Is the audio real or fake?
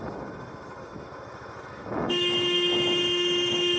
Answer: fake